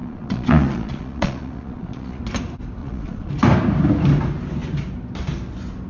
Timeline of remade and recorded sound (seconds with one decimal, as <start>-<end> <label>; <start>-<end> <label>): 0.0-2.2 remade; 2.2-2.8 recorded; 2.8-3.3 remade; 3.3-5.9 recorded